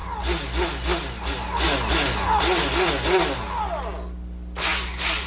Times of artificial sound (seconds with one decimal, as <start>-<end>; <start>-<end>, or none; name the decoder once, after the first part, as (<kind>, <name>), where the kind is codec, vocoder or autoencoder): 4.7-5.3 (vocoder, BigVGAN v2)